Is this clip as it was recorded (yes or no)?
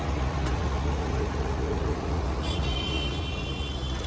no